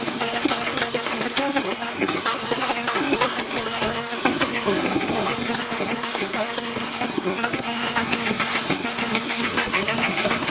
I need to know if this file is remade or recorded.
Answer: remade